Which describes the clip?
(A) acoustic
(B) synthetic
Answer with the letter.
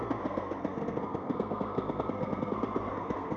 B